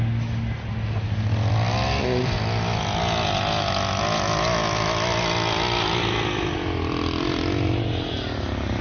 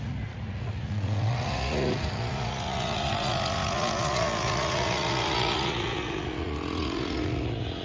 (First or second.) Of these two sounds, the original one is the first